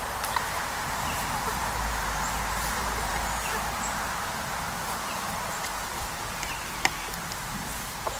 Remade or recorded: remade